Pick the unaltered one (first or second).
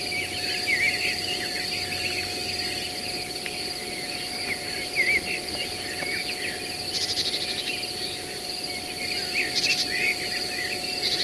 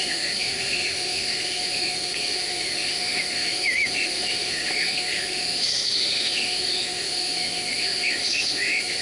first